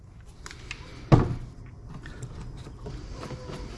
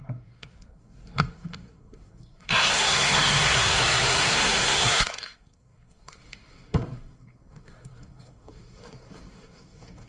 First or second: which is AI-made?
second